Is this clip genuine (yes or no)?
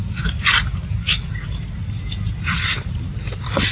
yes